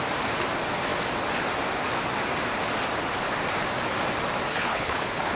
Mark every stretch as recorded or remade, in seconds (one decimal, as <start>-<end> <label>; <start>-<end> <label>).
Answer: 0.0-4.5 recorded; 4.5-5.4 remade